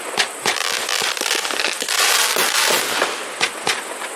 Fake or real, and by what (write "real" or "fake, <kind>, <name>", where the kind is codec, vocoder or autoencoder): real